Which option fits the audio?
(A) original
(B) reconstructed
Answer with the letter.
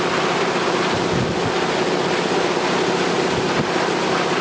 A